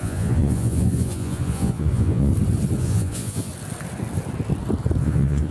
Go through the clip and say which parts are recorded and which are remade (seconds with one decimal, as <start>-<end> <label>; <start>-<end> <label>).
0.0-2.3 remade; 2.3-2.8 recorded; 2.8-3.5 remade; 3.5-5.0 recorded; 5.0-5.5 remade